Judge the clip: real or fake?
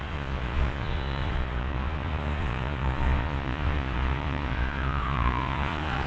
fake